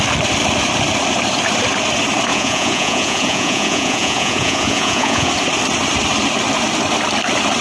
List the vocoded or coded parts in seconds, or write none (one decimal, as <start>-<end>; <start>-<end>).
2.3-5.3